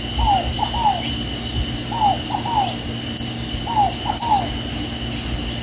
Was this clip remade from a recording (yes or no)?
no